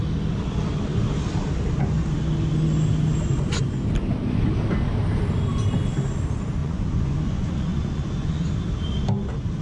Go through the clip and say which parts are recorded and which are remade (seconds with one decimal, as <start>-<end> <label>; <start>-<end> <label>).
0.0-6.6 recorded; 6.6-8.4 remade; 8.4-9.6 recorded